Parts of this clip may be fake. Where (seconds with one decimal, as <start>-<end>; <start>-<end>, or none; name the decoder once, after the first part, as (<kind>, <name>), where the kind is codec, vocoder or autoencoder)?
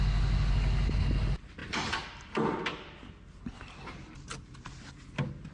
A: 1.6-4.9 (vocoder, BigVGAN v2)